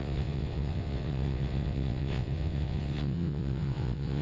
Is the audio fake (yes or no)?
yes